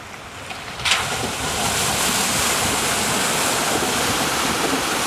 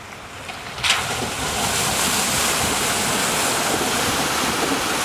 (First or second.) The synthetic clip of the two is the first